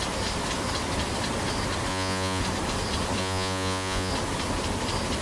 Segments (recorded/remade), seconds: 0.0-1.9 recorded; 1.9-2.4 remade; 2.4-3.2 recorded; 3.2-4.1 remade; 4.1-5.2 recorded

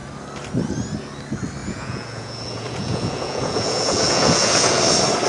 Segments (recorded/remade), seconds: 0.0-1.6 recorded; 1.6-4.8 remade; 4.8-5.3 recorded

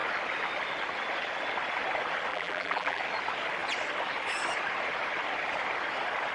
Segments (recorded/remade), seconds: 0.0-2.3 recorded; 2.3-3.0 remade; 3.0-6.3 recorded

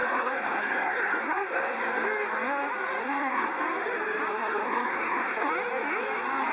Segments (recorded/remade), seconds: 0.0-1.8 remade; 1.8-3.0 recorded; 3.0-3.6 remade; 3.6-4.3 recorded; 4.3-5.5 remade; 5.5-6.5 recorded

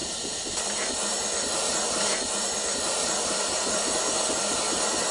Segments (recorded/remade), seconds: 0.0-1.6 remade; 1.6-2.1 recorded; 2.1-3.9 remade; 3.9-5.1 recorded

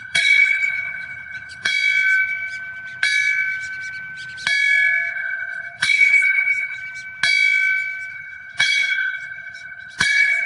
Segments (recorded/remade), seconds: 0.0-1.7 remade; 1.7-5.1 recorded; 5.1-6.8 remade; 6.8-8.1 recorded; 8.1-10.5 remade